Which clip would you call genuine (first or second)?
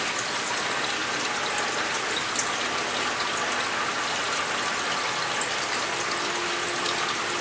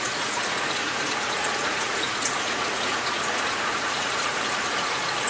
first